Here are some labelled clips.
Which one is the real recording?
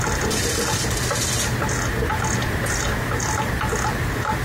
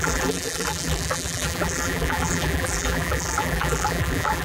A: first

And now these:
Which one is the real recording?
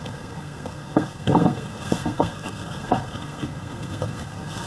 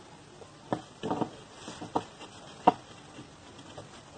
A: second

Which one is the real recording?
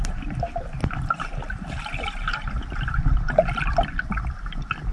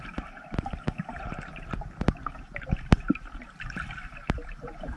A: first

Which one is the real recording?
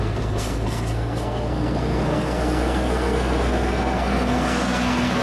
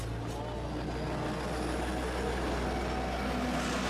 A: second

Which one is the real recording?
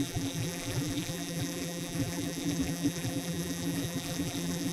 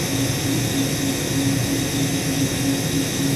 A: second